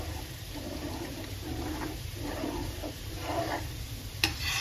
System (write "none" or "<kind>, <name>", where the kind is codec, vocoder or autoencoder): vocoder, BigVGAN v2